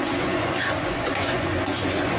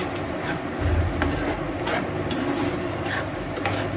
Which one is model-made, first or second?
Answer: first